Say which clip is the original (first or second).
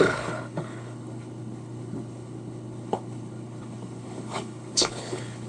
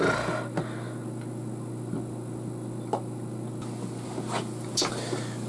second